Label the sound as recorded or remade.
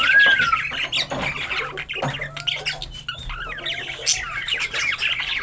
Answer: recorded